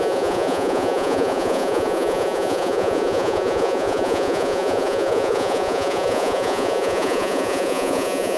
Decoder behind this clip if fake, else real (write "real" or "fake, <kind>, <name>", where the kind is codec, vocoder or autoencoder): fake, vocoder, Vocos